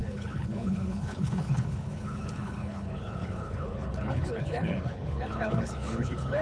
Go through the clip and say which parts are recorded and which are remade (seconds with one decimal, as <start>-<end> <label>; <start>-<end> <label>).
0.0-6.4 remade